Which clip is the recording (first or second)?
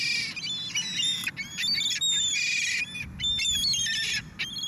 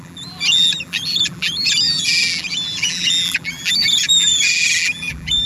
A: first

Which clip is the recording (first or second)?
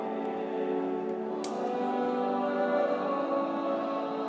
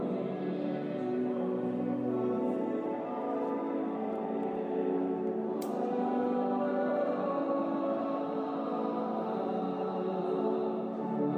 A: first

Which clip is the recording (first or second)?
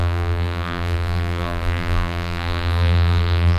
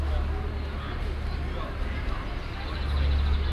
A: second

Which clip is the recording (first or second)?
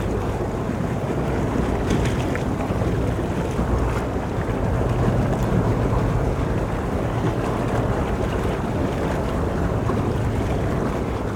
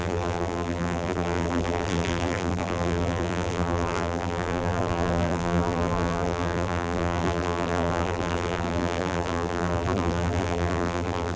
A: first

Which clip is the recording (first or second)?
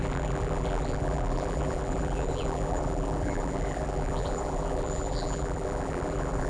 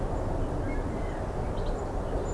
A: second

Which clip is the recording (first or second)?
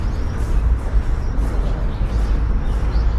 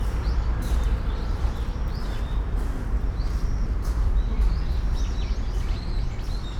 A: first